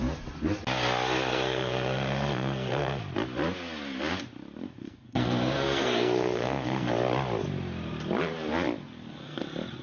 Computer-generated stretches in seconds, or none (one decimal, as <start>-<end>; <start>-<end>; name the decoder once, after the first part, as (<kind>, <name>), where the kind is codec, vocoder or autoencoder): 1.3-3.0 (codec, SNAC); 4.6-6.9; 8.8-9.4